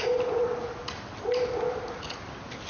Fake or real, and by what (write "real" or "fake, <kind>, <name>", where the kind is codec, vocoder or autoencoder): real